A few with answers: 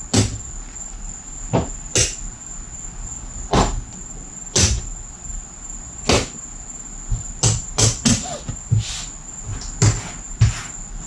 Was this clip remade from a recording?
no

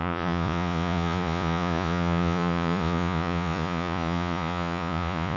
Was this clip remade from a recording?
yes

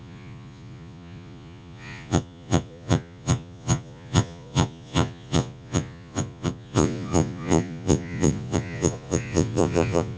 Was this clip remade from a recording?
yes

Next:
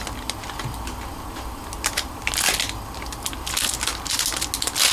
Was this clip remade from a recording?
no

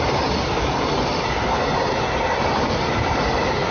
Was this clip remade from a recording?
no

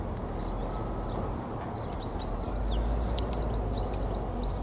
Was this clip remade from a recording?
no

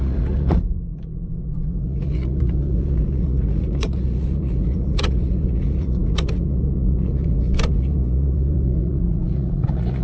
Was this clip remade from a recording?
yes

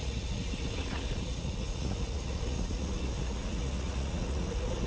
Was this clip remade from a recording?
yes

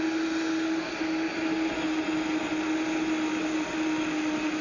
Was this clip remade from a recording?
no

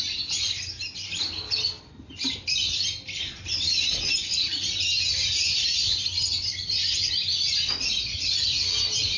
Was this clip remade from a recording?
no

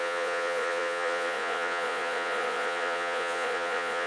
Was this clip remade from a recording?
yes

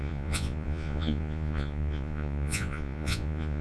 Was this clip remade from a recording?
yes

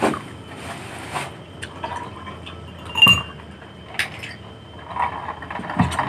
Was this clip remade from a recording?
no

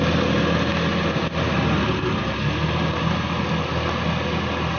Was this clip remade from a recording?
no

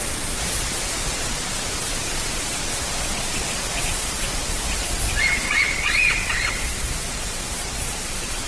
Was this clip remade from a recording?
yes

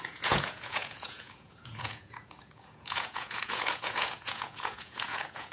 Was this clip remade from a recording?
yes